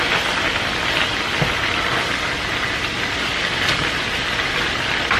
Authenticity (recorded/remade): recorded